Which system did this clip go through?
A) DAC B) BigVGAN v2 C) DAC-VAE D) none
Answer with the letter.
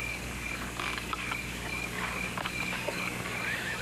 A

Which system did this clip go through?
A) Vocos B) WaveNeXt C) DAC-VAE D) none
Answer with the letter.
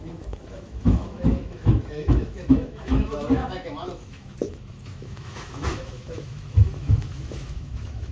C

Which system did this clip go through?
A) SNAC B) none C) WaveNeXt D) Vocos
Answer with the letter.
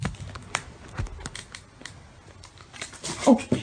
B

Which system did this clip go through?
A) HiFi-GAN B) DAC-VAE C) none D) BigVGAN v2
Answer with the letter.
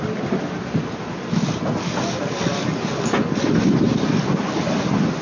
C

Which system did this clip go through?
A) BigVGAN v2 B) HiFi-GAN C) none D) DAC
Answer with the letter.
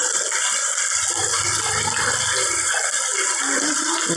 A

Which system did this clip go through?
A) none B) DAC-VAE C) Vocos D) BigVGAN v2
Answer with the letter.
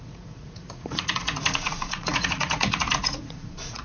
C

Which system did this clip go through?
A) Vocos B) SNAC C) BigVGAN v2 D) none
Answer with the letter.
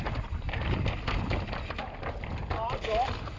D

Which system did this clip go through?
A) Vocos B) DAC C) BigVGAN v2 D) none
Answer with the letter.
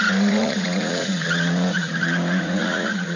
A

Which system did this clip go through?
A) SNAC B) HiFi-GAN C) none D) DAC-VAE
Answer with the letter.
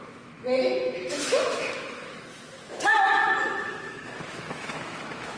D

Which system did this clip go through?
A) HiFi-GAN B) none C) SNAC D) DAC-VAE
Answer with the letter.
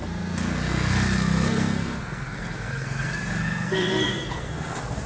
C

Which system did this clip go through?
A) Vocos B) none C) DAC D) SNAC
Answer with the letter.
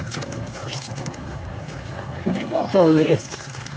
D